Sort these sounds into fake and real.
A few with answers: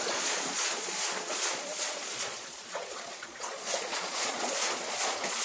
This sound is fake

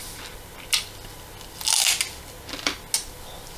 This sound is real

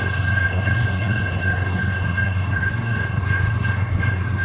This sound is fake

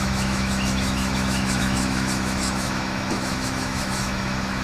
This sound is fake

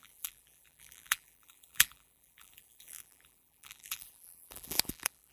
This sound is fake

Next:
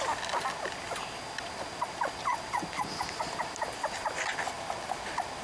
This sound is real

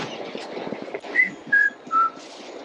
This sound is fake